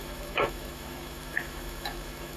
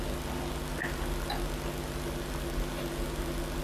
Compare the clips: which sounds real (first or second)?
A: second